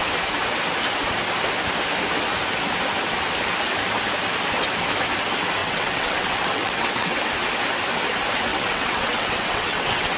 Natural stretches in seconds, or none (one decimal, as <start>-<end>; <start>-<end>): 0.0-5.6; 7.3-8.5